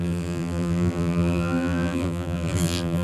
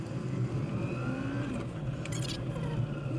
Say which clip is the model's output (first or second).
first